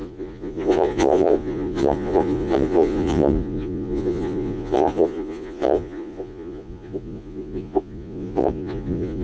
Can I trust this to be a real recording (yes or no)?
no